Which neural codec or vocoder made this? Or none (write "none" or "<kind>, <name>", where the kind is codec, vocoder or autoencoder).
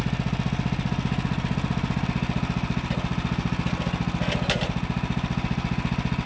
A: none